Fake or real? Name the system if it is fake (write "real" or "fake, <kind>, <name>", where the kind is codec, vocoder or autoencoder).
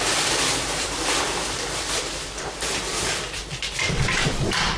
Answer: fake, vocoder, BigVGAN v2